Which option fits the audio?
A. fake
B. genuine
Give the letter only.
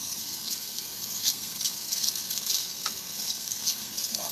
A